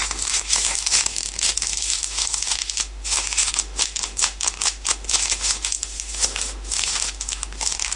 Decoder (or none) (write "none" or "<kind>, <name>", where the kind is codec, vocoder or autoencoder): autoencoder, DAC-VAE